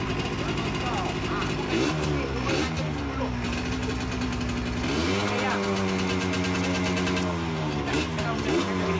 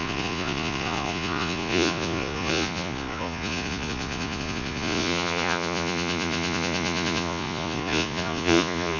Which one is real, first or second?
first